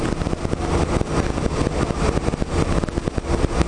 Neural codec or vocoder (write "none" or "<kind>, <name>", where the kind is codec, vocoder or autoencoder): none